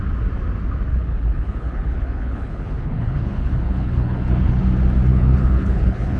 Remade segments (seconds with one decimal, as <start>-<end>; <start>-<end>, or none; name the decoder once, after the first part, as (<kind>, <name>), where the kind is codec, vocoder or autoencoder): 0.9-4.6 (codec, HILCodec); 5.1-6.2